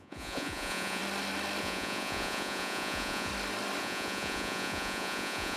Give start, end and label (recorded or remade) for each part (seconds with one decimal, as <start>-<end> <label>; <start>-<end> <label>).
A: 0.0-1.0 remade; 1.0-1.6 recorded; 1.6-3.3 remade; 3.3-3.8 recorded; 3.8-5.6 remade